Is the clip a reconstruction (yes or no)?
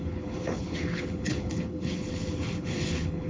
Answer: yes